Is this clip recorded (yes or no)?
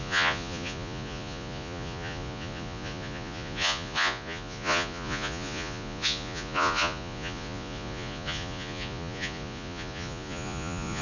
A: no